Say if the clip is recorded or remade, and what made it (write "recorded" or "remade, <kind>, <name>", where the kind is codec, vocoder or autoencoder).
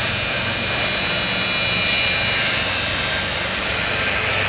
recorded